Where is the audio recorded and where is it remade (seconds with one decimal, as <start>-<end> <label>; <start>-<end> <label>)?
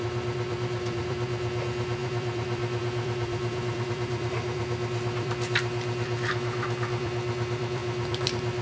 0.0-8.6 remade